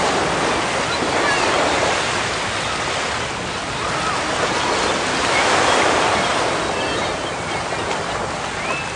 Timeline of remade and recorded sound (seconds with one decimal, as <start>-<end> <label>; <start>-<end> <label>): 0.0-9.0 recorded